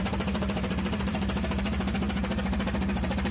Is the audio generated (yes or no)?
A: yes